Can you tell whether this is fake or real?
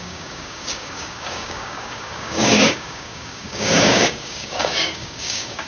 fake